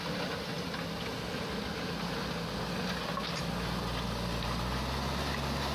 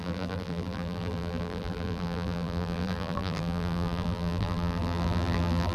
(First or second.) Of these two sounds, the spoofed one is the second